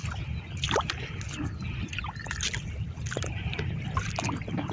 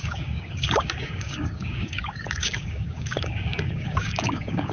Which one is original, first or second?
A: first